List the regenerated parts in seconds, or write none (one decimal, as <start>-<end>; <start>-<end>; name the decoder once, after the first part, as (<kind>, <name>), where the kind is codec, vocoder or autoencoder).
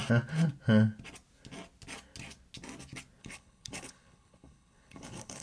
3.2-5.4 (codec, HILCodec)